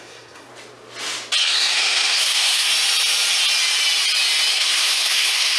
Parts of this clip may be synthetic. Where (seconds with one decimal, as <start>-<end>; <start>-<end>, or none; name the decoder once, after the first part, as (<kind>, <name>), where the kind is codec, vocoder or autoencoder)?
0.0-0.5 (codec, SNAC); 1.4-2.7; 4.5-5.6